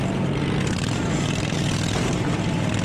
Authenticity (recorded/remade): recorded